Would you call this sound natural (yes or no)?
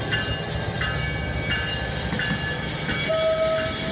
yes